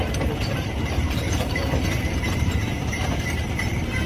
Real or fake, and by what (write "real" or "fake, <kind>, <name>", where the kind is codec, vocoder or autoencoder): fake, vocoder, BigVGAN v2